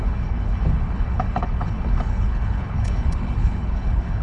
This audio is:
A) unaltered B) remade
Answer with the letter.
B